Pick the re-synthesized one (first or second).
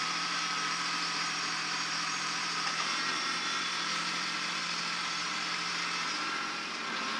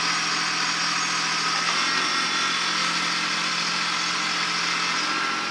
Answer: first